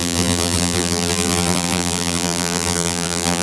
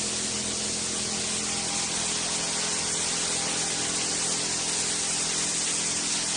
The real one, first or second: second